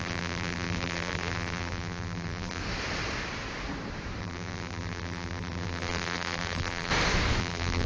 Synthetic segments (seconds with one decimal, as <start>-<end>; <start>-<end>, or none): 0.0-2.6; 4.2-6.9; 7.4-7.9